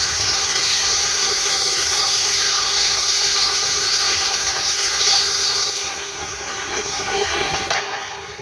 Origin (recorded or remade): remade